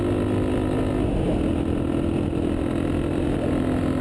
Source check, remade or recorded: recorded